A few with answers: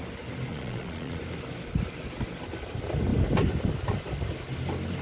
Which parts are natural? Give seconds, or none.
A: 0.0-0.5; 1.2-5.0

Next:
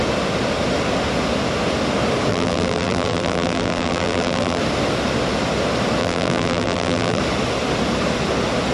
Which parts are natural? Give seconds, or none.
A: 0.0-2.3; 4.6-6.0; 7.2-8.7